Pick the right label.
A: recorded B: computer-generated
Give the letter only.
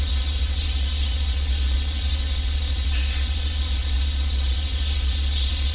B